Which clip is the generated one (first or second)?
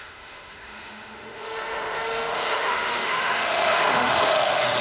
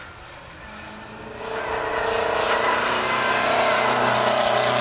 first